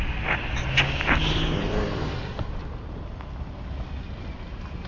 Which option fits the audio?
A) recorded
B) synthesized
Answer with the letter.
A